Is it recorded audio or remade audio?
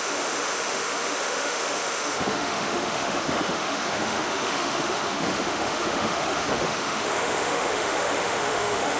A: remade